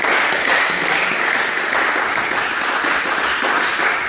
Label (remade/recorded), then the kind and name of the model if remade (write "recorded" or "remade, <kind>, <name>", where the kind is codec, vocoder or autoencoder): recorded